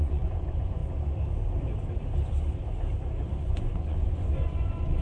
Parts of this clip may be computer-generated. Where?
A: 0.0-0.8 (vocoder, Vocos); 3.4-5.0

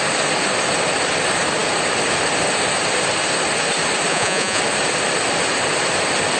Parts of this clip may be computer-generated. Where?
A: 4.1-4.6 (vocoder, Vocos)

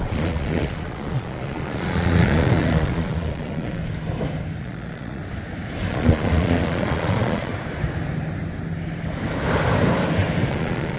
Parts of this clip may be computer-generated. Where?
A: 0.0-3.8 (vocoder, Vocos); 4.6-5.2; 5.9-7.5; 10.5-11.0

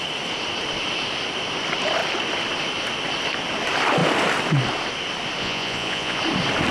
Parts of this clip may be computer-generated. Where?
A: 5.4-6.2 (vocoder, Vocos)

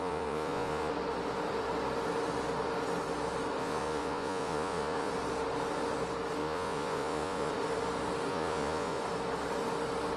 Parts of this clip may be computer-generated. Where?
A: 0.0-0.9 (vocoder, Vocos); 3.6-5.1; 6.4-7.5; 8.3-9.0

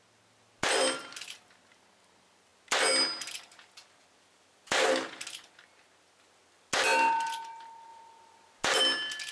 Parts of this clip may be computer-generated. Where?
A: none